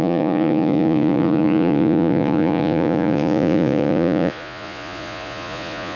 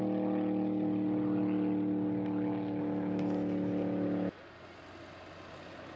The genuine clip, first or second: second